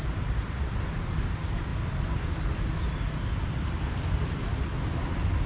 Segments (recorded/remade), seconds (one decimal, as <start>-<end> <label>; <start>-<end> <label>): 0.0-5.5 recorded